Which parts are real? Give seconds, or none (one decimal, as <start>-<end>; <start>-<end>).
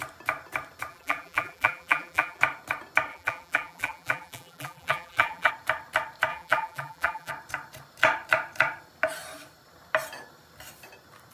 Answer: 0.0-0.9; 2.4-3.1; 5.5-6.3; 7.3-11.3